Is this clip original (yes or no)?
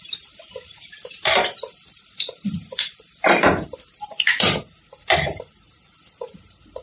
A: no